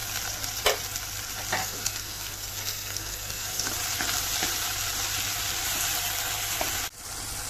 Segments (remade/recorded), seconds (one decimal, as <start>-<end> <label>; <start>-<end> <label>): 0.0-1.6 recorded; 1.6-3.7 remade; 3.7-7.5 recorded